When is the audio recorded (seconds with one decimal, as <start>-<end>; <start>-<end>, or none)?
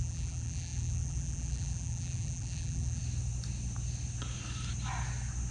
3.0-5.5